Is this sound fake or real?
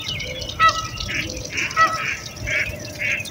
real